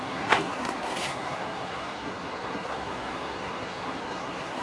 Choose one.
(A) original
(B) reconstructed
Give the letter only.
B